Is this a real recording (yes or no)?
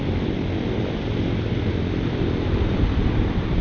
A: yes